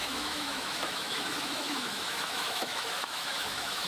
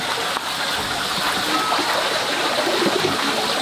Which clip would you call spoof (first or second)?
first